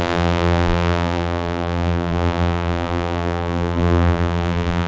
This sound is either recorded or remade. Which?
remade